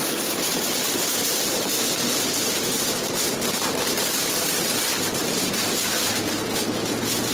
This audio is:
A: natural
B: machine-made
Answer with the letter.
B